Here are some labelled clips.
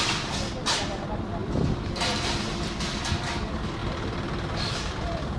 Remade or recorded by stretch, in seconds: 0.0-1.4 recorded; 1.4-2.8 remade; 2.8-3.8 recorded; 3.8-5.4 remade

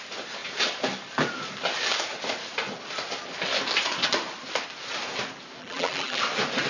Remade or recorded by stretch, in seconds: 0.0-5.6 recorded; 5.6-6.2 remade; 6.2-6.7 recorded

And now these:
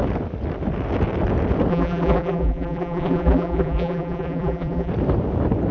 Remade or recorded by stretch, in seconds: 0.0-1.7 recorded; 1.7-4.9 remade; 4.9-5.7 recorded